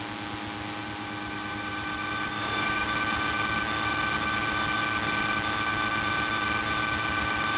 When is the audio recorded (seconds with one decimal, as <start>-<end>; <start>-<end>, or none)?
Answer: 0.0-2.4; 2.9-7.6